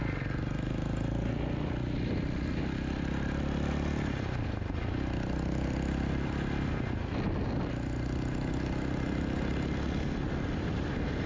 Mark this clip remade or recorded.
recorded